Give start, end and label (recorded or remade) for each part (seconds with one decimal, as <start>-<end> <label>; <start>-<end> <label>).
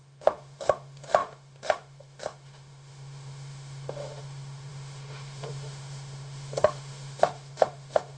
0.0-8.2 remade